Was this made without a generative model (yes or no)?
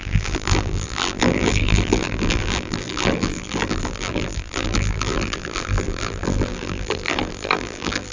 no